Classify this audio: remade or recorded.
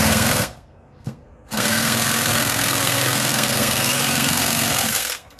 remade